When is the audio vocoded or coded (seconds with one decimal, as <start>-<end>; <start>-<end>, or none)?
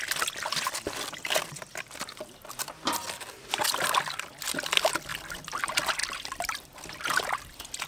none